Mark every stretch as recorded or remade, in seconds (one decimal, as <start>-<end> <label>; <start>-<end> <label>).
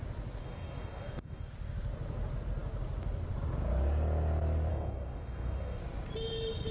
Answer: 0.0-0.4 recorded; 0.4-1.5 remade; 1.5-4.7 recorded; 4.7-5.8 remade; 5.8-6.7 recorded